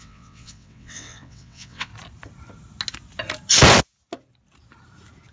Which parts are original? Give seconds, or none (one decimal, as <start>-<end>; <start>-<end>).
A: 1.9-5.3